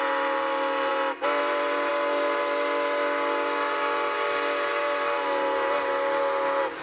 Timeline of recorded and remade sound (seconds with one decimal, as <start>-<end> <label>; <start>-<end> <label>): 0.0-6.8 recorded